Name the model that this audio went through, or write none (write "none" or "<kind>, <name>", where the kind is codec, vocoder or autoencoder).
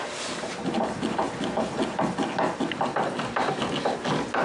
none